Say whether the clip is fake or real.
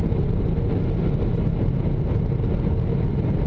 real